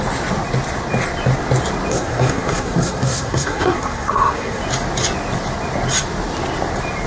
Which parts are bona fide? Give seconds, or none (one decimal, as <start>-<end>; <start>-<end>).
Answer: 0.0-1.9; 4.6-7.1